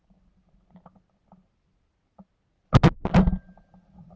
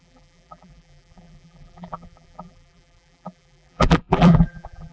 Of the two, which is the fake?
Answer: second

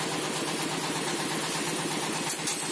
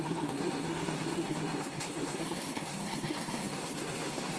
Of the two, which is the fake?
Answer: second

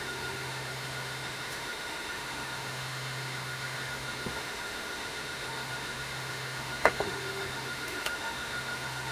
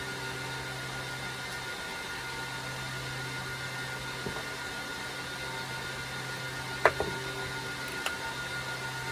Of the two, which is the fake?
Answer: first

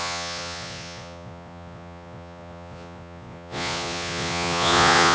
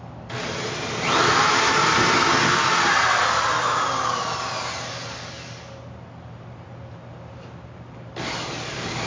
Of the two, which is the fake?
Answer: first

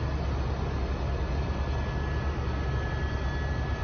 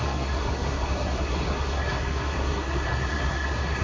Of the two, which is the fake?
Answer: second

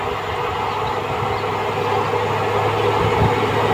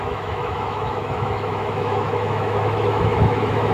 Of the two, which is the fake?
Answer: second